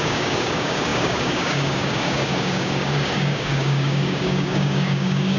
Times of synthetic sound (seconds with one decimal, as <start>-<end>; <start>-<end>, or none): 0.0-5.4